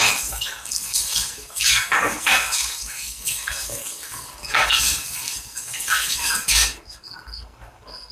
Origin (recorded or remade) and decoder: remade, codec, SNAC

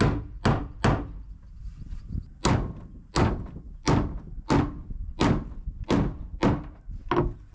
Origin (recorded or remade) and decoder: recorded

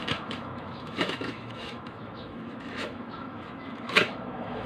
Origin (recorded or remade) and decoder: remade, autoencoder, DAC-VAE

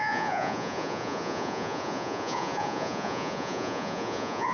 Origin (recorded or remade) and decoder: remade, vocoder, Vocos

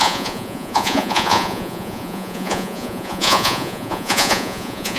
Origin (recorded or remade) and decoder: remade, vocoder, Vocos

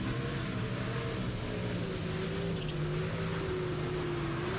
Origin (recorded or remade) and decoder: recorded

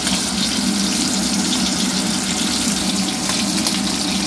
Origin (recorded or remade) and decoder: recorded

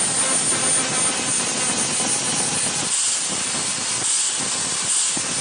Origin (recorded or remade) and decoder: recorded